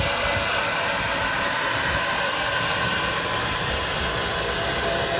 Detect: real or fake real